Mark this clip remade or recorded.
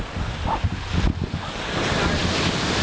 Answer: recorded